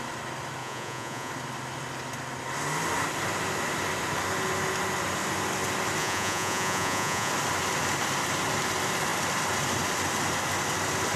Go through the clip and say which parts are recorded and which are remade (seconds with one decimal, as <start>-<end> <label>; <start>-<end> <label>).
0.0-0.6 recorded; 0.6-1.3 remade; 1.3-6.0 recorded; 6.0-7.3 remade; 7.3-11.2 recorded